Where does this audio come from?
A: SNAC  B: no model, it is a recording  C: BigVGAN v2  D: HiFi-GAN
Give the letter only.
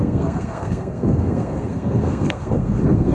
A